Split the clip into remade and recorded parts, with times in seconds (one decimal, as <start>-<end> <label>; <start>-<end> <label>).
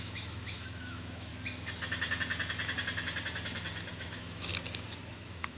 0.0-1.3 remade; 1.3-3.9 recorded; 3.9-4.5 remade; 4.5-5.1 recorded; 5.1-5.6 remade